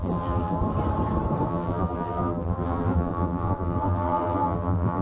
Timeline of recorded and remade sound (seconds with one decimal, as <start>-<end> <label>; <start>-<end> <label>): 0.0-0.6 remade; 0.6-1.5 recorded; 1.5-5.0 remade